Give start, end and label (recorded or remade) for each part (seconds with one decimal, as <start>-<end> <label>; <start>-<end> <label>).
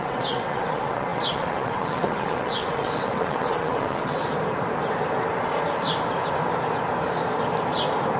0.0-4.2 remade; 4.2-8.2 recorded